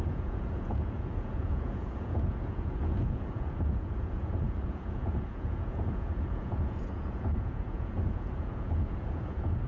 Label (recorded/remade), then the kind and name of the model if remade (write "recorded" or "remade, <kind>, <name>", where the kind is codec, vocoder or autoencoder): remade, vocoder, Vocos